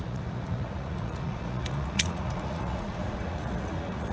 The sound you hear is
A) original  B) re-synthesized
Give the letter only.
B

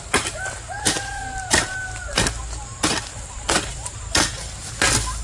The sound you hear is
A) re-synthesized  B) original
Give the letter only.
B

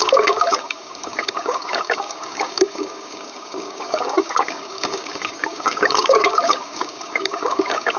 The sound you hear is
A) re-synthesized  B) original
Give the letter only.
A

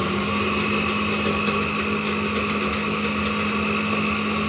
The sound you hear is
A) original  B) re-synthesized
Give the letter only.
A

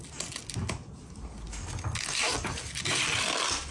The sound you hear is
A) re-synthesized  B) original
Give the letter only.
B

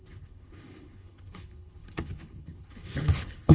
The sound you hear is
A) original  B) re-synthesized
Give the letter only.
B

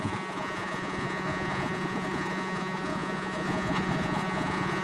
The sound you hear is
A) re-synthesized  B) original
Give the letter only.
A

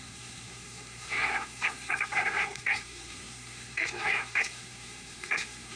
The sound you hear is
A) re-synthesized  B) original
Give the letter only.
A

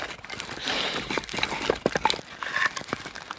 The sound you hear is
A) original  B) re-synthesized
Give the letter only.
A